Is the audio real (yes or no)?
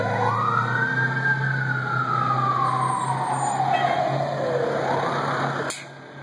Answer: yes